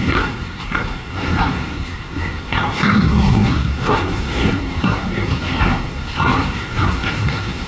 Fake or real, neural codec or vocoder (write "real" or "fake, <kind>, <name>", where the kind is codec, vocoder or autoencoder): fake, codec, SNAC